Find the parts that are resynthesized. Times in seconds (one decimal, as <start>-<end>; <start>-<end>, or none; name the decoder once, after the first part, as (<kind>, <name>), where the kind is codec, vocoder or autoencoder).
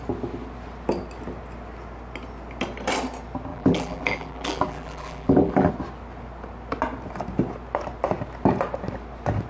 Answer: 3.5-5.7 (vocoder, BigVGAN v2)